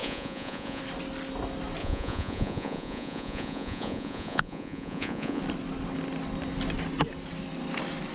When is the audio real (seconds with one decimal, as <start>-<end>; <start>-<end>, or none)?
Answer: 0.8-1.8; 5.4-8.1